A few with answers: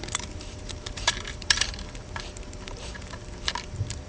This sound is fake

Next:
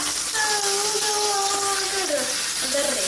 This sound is real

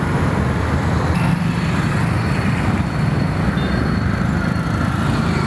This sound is real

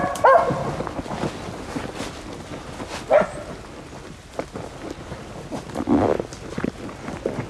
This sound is real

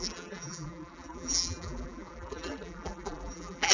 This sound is fake